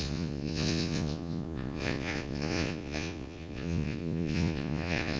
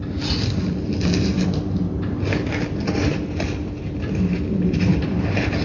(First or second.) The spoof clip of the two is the first